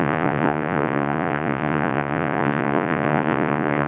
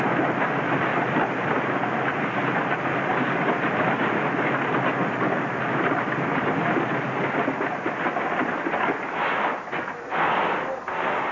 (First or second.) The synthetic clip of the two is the first